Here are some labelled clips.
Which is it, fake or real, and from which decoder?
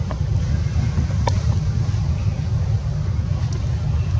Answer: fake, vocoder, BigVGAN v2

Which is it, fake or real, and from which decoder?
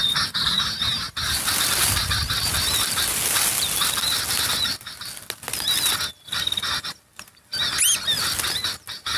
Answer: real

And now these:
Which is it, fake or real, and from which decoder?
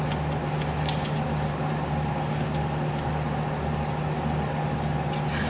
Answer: real